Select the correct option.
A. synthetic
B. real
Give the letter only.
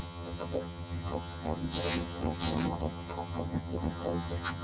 A